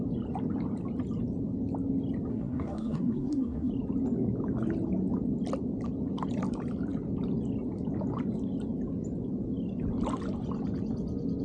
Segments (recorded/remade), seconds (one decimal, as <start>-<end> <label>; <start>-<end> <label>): 0.0-2.3 recorded; 2.3-3.7 remade; 3.7-11.4 recorded